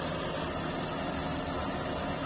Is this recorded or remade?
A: recorded